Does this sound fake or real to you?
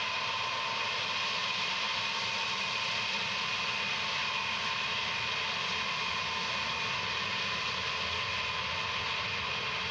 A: real